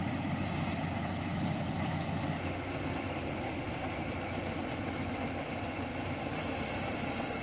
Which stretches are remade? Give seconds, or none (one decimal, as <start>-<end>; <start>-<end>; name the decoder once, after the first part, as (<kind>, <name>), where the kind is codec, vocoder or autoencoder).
none